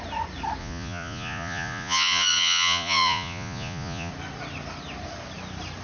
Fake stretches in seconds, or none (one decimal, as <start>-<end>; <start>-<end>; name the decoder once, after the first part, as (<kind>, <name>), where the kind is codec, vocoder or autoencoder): 0.6-4.1 (vocoder, Vocos)